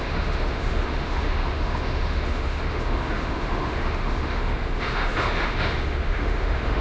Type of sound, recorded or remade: remade